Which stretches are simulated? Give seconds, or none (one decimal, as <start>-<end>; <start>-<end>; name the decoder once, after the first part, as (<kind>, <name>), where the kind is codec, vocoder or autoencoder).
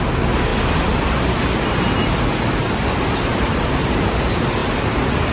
none